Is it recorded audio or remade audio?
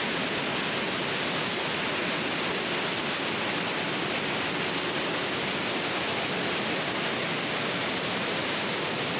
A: recorded